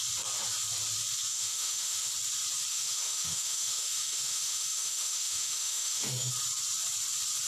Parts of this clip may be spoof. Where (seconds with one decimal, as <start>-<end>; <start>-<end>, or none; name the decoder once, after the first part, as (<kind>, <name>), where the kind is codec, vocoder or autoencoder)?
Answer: 1.3-2.1 (autoencoder, DAC-VAE); 2.7-6.3